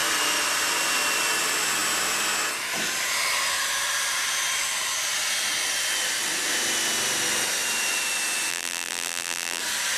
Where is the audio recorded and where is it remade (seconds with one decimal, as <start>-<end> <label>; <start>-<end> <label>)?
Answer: 0.0-8.5 recorded; 8.5-9.6 remade; 9.6-10.0 recorded